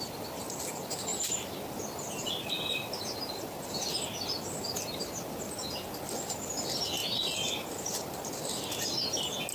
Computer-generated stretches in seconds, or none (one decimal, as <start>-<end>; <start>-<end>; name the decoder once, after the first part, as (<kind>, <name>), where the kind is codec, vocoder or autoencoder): none

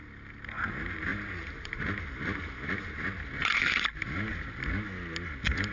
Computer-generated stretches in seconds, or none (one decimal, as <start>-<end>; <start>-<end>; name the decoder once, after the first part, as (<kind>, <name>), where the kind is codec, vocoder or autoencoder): 1.1-2.0 (vocoder, BigVGAN v2); 3.4-4.0